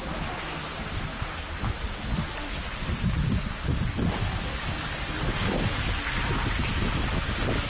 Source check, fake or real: real